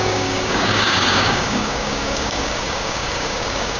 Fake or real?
fake